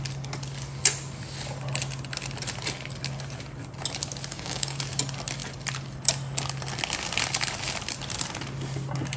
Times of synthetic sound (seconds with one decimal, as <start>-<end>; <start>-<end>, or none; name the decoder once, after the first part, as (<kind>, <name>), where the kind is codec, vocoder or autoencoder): 4.3-4.8 (codec, DAC)